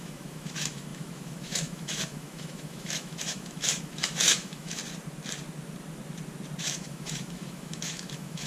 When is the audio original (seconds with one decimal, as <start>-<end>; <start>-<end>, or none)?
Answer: 4.8-6.6